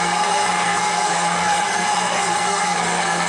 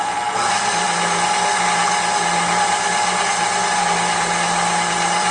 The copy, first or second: first